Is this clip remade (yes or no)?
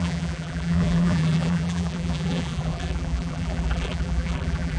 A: yes